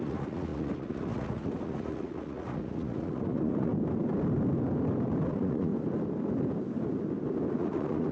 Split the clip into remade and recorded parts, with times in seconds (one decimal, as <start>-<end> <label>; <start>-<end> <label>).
0.0-3.7 remade; 3.7-5.3 recorded; 5.3-5.7 remade; 5.7-7.5 recorded; 7.5-8.1 remade

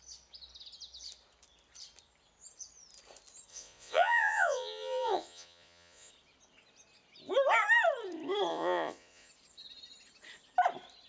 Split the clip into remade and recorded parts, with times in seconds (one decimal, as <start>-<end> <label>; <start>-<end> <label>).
0.0-3.5 recorded; 3.5-6.1 remade; 6.1-8.5 recorded; 8.5-9.3 remade; 9.3-11.1 recorded

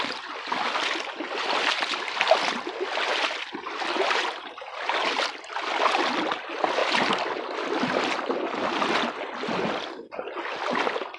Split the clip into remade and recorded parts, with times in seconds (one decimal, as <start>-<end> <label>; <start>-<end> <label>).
0.0-11.2 recorded

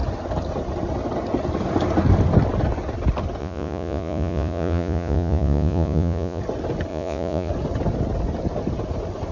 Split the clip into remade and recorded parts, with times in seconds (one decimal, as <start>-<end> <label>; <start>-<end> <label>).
0.0-3.4 recorded; 3.4-6.4 remade; 6.4-6.9 recorded; 6.9-7.5 remade; 7.5-9.3 recorded

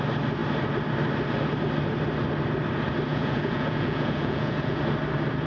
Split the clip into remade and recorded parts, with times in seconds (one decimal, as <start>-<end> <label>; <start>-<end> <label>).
0.0-3.1 recorded; 3.1-4.8 remade; 4.8-5.5 recorded